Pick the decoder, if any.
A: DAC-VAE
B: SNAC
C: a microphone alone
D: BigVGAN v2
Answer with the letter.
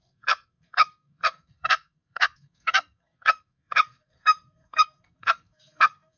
B